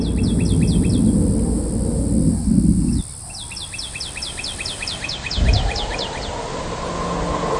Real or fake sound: real